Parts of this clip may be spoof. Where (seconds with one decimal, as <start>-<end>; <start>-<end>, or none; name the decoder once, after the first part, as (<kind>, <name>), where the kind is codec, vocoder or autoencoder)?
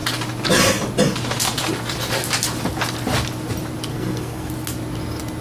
3.9-4.5 (codec, SNAC)